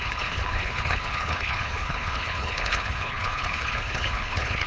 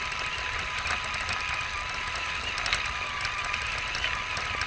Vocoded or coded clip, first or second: first